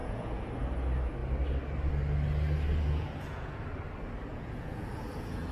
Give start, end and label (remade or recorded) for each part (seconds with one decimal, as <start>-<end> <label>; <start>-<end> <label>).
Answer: 0.0-0.5 remade; 0.5-2.7 recorded; 2.7-3.6 remade; 3.6-4.3 recorded; 4.3-5.5 remade